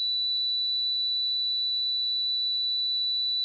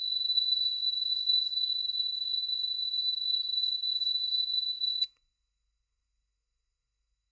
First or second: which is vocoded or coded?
second